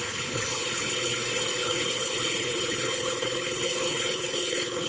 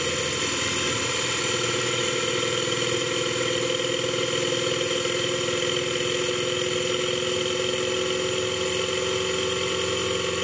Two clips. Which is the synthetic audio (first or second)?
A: first